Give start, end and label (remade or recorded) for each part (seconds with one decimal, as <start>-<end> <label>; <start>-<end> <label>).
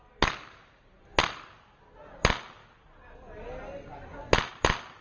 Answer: 0.0-5.0 recorded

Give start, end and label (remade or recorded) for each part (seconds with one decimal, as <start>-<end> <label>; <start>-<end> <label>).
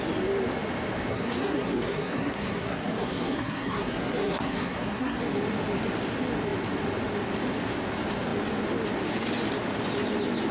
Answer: 0.0-1.1 recorded; 1.1-5.2 remade; 5.2-10.5 recorded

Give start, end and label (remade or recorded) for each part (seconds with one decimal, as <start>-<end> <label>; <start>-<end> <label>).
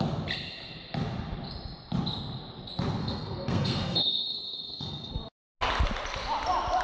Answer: 0.0-3.0 recorded; 3.0-5.1 remade; 5.1-6.8 recorded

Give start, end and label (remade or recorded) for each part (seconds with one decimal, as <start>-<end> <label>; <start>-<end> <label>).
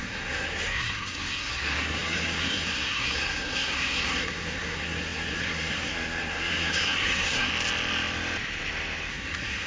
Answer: 0.0-7.5 remade; 7.5-9.1 recorded; 9.1-9.7 remade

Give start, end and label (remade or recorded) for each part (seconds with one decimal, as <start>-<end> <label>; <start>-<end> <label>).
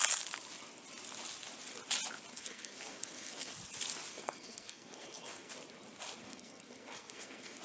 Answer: 0.0-2.3 recorded; 2.3-3.5 remade; 3.5-4.1 recorded; 4.1-5.5 remade; 5.5-6.2 recorded; 6.2-7.6 remade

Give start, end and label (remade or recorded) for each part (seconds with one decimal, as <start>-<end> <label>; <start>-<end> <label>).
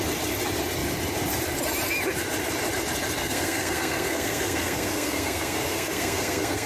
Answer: 0.0-3.2 recorded; 3.2-6.7 remade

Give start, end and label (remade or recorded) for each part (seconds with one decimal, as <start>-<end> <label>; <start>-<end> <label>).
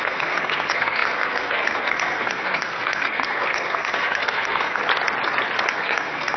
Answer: 0.0-4.8 remade; 4.8-5.7 recorded; 5.7-6.4 remade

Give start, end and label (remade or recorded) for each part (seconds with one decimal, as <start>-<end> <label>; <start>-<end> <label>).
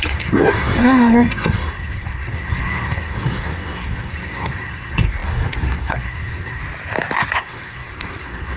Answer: 0.0-6.6 remade; 6.6-7.4 recorded; 7.4-8.6 remade